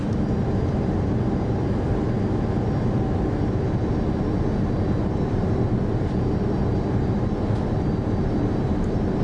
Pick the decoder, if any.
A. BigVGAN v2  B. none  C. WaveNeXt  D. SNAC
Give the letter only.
B